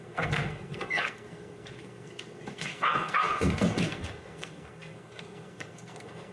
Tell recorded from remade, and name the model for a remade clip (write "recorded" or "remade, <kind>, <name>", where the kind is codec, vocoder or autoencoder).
remade, codec, SNAC